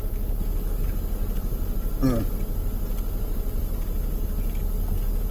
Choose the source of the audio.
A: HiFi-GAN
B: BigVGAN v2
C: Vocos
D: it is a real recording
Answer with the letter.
D